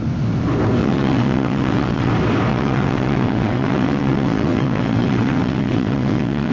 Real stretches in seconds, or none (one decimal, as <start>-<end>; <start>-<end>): 0.0-0.8; 2.1-2.5